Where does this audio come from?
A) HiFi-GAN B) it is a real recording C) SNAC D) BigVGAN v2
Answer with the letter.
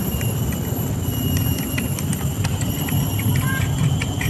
D